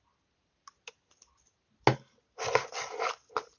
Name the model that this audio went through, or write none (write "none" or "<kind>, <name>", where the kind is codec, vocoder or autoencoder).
none